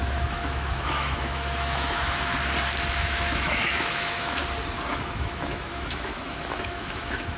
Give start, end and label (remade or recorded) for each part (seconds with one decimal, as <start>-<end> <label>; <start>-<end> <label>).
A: 0.0-2.3 remade; 2.3-2.9 recorded; 2.9-4.4 remade; 4.4-4.9 recorded; 4.9-7.4 remade

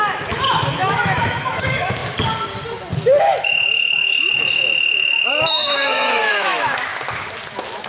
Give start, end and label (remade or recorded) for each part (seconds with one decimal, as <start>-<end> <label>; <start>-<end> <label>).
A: 0.0-2.0 remade; 2.0-3.2 recorded; 3.2-6.9 remade; 6.9-7.9 recorded

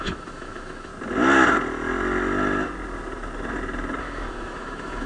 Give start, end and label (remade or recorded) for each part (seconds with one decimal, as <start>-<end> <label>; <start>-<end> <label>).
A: 0.0-0.9 remade; 0.9-4.0 recorded; 4.0-5.1 remade

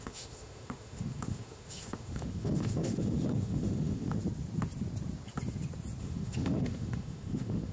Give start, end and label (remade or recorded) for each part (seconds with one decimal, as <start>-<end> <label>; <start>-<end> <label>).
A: 0.0-4.2 remade; 4.2-6.0 recorded; 6.0-7.7 remade

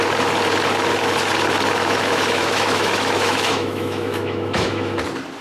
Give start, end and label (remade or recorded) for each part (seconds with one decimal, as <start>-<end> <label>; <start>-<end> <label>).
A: 0.0-1.8 recorded; 1.8-5.0 remade; 5.0-5.4 recorded